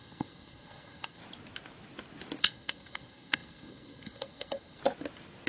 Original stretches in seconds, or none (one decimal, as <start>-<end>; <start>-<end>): 1.2-2.4; 4.8-5.5